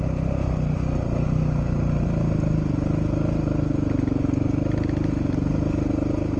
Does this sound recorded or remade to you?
recorded